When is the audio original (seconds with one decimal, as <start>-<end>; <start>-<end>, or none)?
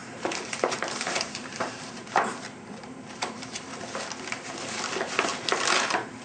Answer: 3.7-6.2